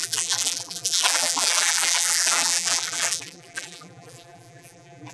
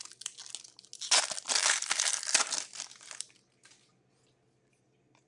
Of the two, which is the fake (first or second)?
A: first